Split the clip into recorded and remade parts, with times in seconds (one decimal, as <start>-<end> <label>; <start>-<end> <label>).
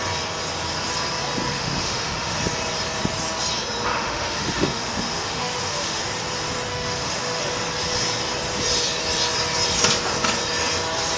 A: 0.0-1.5 recorded; 1.5-2.4 remade; 2.4-3.9 recorded; 3.9-6.0 remade; 6.0-6.7 recorded; 6.7-7.4 remade; 7.4-11.2 recorded